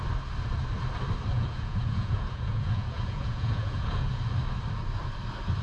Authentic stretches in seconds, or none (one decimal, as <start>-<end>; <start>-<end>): 0.0-1.3; 4.2-5.6